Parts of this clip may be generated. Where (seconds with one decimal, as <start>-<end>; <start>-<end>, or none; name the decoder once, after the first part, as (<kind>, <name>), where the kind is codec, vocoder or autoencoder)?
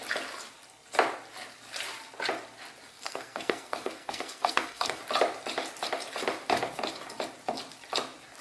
2.9-5.0 (codec, SNAC)